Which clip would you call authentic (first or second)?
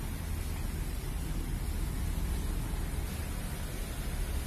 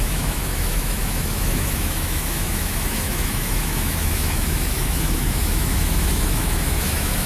first